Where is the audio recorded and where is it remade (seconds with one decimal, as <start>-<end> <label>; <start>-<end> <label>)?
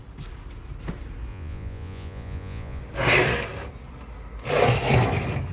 0.0-1.3 recorded; 1.3-2.8 remade; 2.8-5.5 recorded